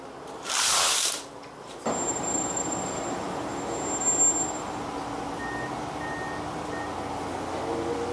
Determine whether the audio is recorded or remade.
recorded